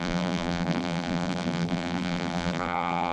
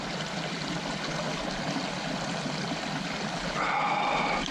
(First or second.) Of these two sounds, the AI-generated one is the first